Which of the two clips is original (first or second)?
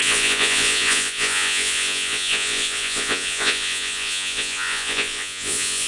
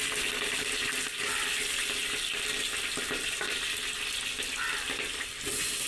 second